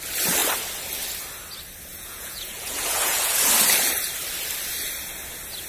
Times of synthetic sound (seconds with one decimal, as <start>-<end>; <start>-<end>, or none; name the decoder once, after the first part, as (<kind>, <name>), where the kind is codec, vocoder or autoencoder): 1.9-3.5 (vocoder, Vocos)